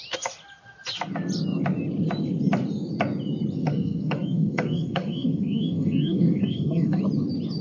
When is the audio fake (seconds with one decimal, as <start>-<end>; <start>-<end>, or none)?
3.6-7.0